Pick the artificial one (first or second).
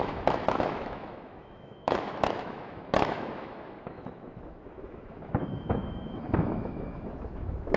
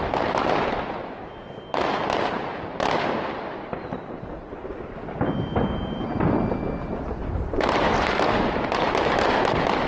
first